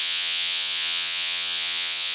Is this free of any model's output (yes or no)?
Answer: no